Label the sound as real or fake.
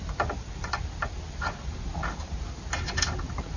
real